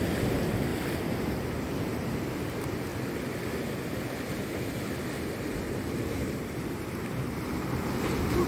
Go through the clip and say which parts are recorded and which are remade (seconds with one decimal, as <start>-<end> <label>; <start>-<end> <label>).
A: 0.0-0.7 remade; 0.7-1.6 recorded; 1.6-2.9 remade; 2.9-6.0 recorded; 6.0-8.5 remade